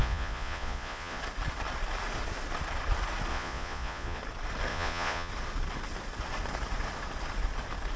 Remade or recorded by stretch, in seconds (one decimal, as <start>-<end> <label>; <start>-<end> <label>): 0.0-1.2 remade; 1.2-3.3 recorded; 3.3-4.2 remade; 4.2-4.7 recorded; 4.7-5.3 remade; 5.3-8.0 recorded